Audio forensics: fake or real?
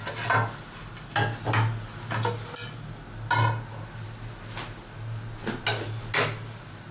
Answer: real